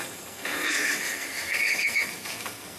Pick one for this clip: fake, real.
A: fake